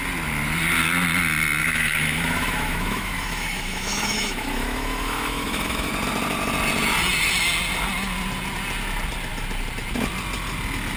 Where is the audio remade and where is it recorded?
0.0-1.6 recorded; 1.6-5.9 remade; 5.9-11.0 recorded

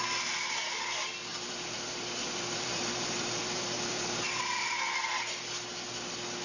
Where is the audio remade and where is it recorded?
0.0-1.3 recorded; 1.3-5.1 remade; 5.1-6.4 recorded

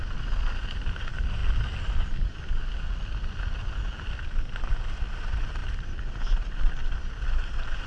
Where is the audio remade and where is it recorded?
0.0-5.6 recorded; 5.6-6.7 remade; 6.7-7.9 recorded

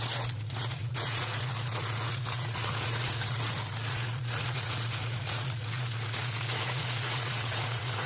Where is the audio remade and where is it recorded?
0.0-8.1 remade